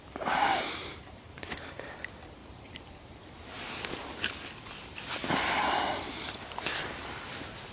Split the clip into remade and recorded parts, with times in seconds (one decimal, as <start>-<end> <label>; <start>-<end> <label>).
0.0-0.5 recorded; 0.5-1.9 remade; 1.9-2.4 recorded; 2.4-3.3 remade; 3.3-7.7 recorded